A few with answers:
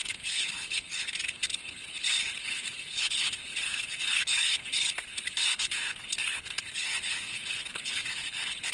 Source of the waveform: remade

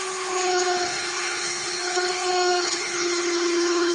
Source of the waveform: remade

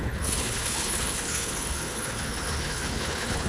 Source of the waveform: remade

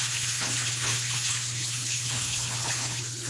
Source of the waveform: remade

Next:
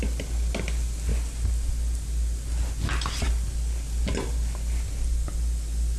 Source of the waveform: recorded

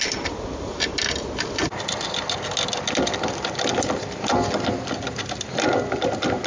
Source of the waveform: recorded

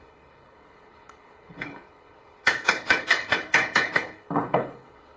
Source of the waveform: remade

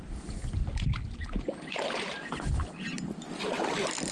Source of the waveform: recorded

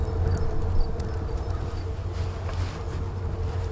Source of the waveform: recorded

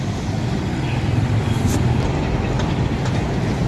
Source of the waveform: recorded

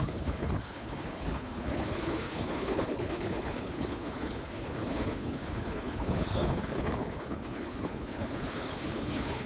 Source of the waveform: remade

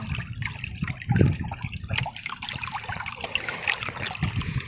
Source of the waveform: recorded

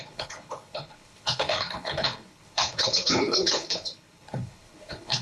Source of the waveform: remade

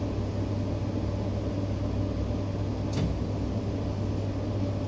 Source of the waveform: recorded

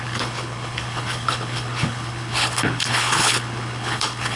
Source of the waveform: remade